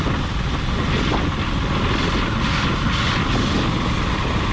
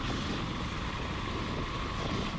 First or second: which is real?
first